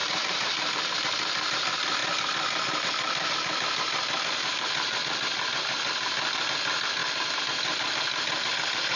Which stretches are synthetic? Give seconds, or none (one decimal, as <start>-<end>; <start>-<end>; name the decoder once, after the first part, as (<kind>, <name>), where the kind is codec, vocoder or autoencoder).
0.0-0.9 (vocoder, BigVGAN v2); 4.4-5.0